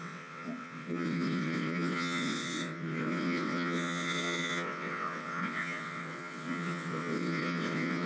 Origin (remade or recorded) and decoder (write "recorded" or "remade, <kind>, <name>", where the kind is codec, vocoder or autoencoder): remade, vocoder, WaveNeXt